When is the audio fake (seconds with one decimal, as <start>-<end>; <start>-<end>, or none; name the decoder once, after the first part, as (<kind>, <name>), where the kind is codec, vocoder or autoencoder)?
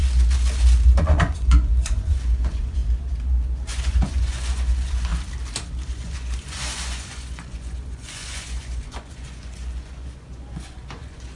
1.0-2.8 (vocoder, Vocos); 3.7-5.1; 5.9-11.4